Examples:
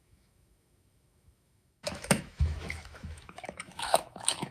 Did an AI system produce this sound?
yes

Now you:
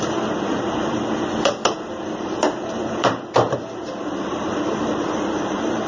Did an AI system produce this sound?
yes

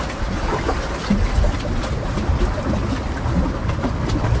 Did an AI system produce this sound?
no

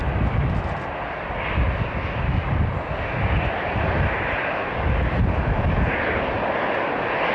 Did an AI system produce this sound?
no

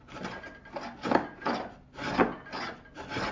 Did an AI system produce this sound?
no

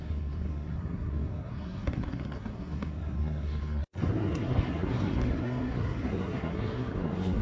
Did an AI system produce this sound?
yes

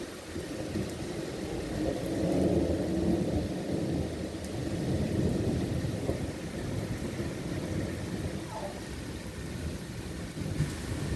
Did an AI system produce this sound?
no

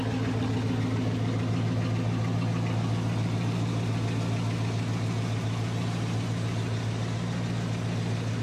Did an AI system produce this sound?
no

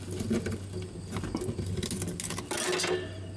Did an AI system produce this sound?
no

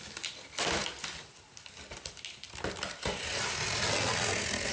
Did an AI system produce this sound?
no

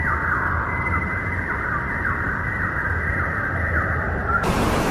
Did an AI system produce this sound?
yes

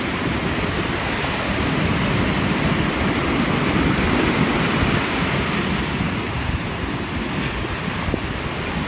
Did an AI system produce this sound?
no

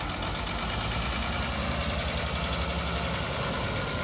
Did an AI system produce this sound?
no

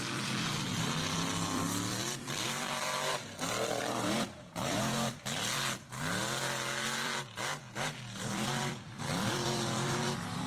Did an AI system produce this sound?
yes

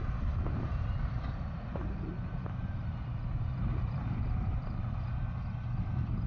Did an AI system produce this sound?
yes